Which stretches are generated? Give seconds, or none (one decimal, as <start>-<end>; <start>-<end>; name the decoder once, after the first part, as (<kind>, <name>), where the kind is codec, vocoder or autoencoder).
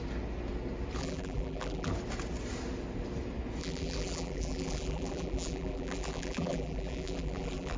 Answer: 1.0-1.9 (vocoder, BigVGAN v2); 3.6-7.8